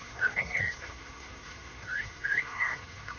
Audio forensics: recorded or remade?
remade